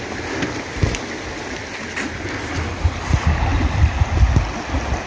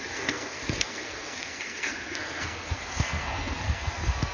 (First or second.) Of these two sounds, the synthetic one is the second